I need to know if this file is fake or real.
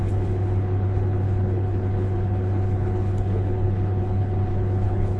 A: fake